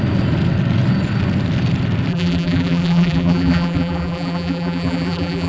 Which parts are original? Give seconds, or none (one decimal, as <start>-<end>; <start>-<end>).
0.0-2.1